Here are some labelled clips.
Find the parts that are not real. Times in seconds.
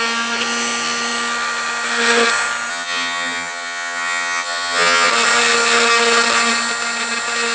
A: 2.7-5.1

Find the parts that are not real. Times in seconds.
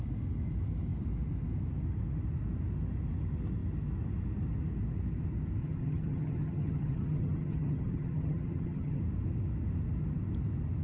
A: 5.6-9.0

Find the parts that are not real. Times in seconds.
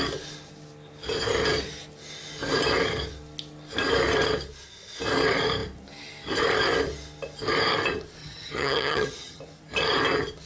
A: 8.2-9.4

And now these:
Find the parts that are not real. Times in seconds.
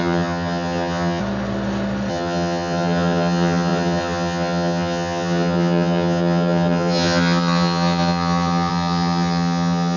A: 0.0-1.2; 2.1-10.0